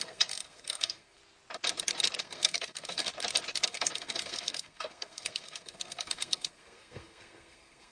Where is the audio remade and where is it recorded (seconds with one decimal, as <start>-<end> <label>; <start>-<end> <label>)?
0.0-1.2 remade; 1.2-2.2 recorded; 2.2-3.1 remade; 3.1-3.7 recorded; 3.7-7.9 remade